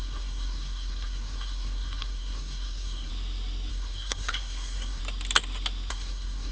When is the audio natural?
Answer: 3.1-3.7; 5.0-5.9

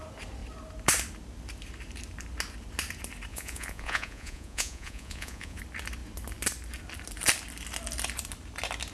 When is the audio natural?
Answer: 0.0-3.3; 5.6-8.9

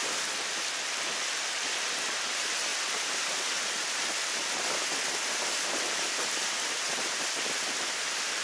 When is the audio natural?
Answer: 0.0-0.6

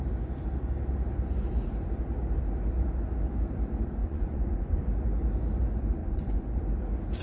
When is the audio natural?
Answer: 0.0-4.0; 4.8-6.0; 6.6-7.2

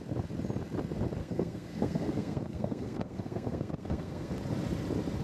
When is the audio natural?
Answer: 0.0-1.2; 4.3-5.2

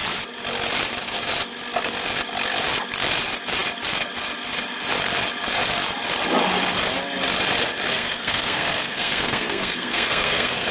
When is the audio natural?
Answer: 0.0-7.9